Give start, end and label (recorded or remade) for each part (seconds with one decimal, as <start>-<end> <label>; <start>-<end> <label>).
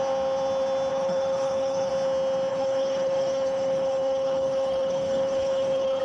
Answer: 0.0-0.9 recorded; 0.9-1.9 remade; 1.9-2.5 recorded; 2.5-6.0 remade